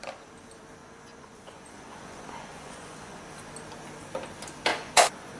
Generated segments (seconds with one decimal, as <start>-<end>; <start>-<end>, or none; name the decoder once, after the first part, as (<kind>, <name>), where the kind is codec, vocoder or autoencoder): 0.8-3.2 (vocoder, Vocos); 4.7-5.4